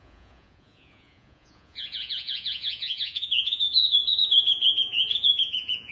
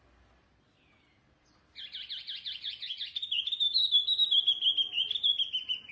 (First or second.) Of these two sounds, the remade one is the first